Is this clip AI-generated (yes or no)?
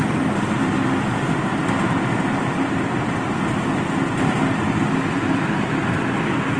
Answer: no